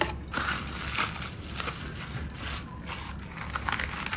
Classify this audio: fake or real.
real